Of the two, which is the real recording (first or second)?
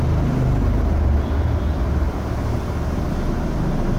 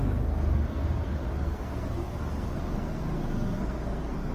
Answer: first